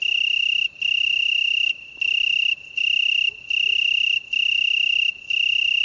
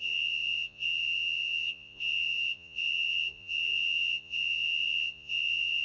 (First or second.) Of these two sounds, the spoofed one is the second